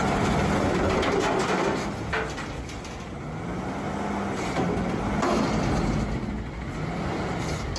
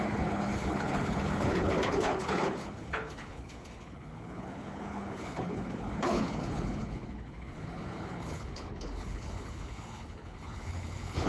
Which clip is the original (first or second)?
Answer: first